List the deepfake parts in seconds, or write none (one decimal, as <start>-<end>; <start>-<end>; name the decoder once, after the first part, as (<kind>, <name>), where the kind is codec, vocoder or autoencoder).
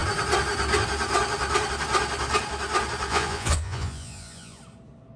3.1-4.6 (vocoder, Vocos)